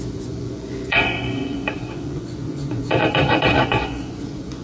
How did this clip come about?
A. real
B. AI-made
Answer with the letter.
B